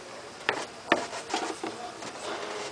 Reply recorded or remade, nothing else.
recorded